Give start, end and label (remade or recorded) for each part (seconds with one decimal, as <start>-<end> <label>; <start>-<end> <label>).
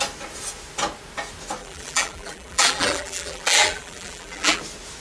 0.0-1.6 recorded; 1.6-4.6 remade; 4.6-5.0 recorded